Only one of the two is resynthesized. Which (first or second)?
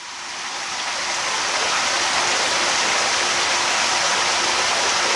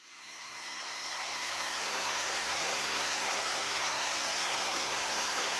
second